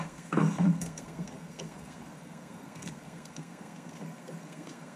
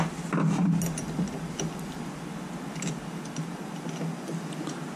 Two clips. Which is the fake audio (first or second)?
first